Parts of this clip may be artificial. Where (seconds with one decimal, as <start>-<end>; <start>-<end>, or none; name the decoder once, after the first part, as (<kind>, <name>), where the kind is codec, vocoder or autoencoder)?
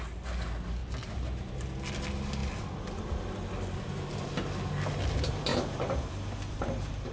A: 2.4-4.1 (vocoder, BigVGAN v2); 5.5-6.6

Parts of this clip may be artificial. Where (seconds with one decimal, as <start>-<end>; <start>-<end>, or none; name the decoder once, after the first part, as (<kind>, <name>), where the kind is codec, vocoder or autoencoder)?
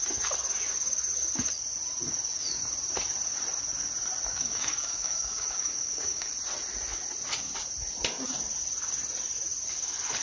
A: 4.3-6.3 (codec, DAC)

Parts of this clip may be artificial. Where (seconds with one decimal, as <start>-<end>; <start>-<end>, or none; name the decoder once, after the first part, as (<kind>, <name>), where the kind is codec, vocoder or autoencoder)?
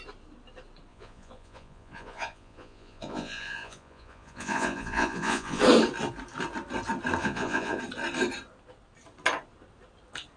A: 0.9-5.6 (vocoder, Vocos); 7.2-7.8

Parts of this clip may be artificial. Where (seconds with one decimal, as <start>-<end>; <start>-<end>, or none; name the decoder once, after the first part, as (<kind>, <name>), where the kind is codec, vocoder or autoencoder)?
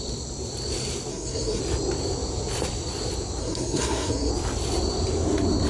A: 1.1-1.6 (codec, SNAC); 3.4-4.3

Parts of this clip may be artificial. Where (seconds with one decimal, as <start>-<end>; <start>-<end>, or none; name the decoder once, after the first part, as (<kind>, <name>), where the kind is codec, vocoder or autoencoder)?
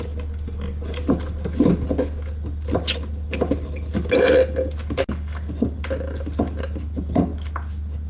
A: none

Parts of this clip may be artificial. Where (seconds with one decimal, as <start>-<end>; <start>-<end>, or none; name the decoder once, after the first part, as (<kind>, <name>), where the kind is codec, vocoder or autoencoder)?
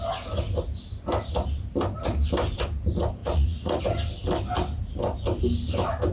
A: 3.2-3.8 (vocoder, Vocos)